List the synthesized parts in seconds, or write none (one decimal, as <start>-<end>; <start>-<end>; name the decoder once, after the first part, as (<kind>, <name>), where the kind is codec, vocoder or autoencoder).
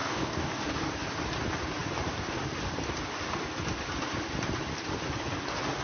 0.0-0.9 (codec, DAC)